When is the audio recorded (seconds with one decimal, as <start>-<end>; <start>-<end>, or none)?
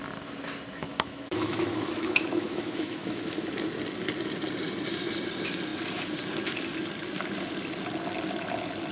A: 0.0-0.8; 3.4-8.9